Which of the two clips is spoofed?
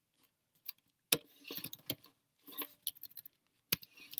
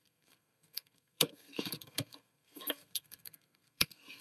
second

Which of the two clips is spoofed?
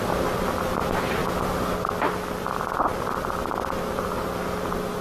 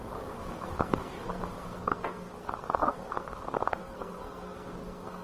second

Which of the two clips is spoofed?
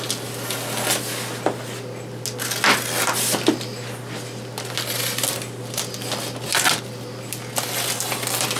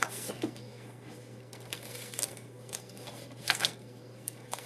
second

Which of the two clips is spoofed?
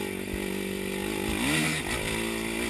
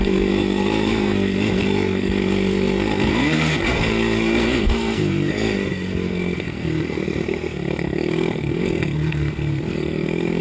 second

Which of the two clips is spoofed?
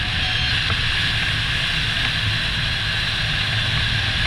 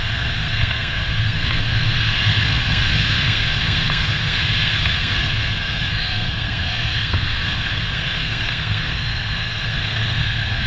second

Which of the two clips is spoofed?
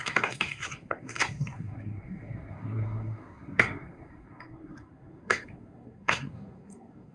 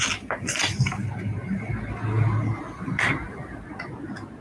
first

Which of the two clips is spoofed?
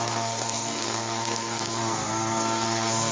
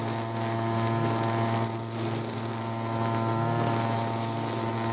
first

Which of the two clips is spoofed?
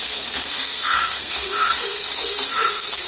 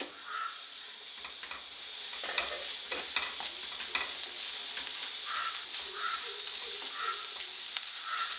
first